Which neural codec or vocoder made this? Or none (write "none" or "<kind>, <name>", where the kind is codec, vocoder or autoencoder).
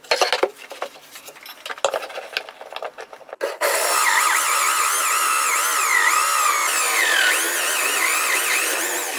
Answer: none